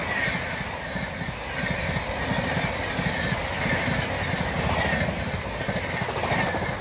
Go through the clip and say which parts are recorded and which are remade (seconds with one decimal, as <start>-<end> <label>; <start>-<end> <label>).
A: 0.0-6.8 recorded